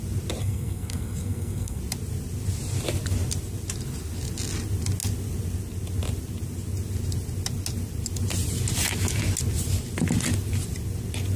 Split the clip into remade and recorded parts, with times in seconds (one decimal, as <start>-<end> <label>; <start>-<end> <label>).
0.0-0.4 recorded; 0.4-1.8 remade; 1.8-11.4 recorded